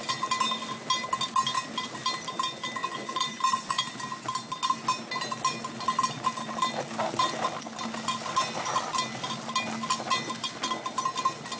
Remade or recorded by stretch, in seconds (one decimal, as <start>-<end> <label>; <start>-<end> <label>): 0.0-2.8 recorded; 2.8-3.8 remade; 3.8-11.6 recorded